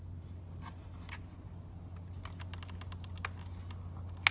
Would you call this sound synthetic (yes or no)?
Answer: no